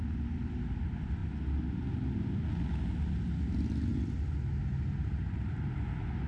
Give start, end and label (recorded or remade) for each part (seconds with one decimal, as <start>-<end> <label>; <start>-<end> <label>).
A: 0.0-5.0 recorded; 5.0-5.7 remade; 5.7-6.3 recorded